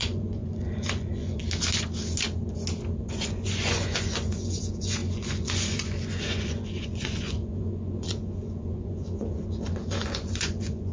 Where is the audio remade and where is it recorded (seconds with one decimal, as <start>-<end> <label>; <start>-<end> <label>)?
0.0-1.4 remade; 1.4-3.0 recorded; 3.0-10.9 remade